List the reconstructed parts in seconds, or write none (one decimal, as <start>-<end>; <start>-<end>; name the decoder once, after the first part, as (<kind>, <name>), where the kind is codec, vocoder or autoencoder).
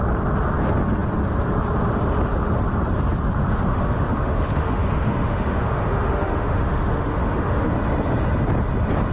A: 3.4-7.7 (autoencoder, DAC-VAE)